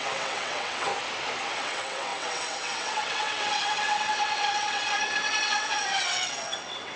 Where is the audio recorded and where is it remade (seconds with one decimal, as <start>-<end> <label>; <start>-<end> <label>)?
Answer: 0.0-0.9 remade; 0.9-1.5 recorded; 1.5-7.0 remade